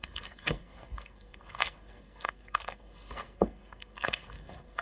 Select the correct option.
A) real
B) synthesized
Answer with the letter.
B